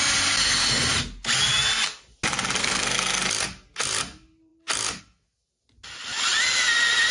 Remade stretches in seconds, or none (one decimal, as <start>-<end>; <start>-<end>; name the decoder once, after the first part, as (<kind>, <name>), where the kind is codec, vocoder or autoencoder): 2.6-3.2 (codec, SNAC)